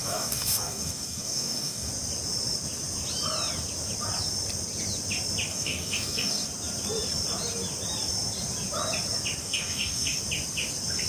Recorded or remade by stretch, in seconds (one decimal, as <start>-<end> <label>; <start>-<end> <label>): 0.0-1.9 remade; 1.9-5.5 recorded; 5.5-6.5 remade; 6.5-9.4 recorded; 9.4-10.2 remade; 10.2-11.1 recorded